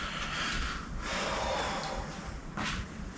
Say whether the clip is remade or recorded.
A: recorded